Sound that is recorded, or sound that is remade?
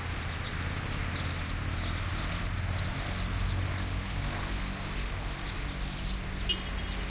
recorded